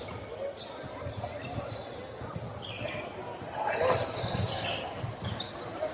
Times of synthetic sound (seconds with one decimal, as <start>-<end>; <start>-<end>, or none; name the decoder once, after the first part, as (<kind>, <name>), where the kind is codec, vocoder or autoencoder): none